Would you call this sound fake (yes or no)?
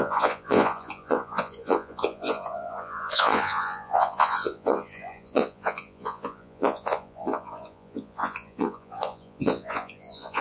yes